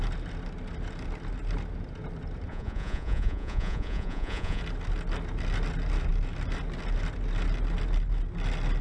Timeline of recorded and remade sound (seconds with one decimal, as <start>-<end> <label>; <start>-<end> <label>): 0.0-2.5 recorded; 2.5-4.6 remade; 4.6-8.8 recorded